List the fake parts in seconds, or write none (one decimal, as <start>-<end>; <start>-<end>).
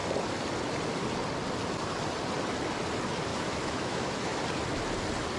3.3-4.4